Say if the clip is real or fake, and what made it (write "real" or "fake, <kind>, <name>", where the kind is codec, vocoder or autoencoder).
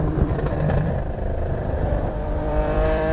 fake, vocoder, BigVGAN v2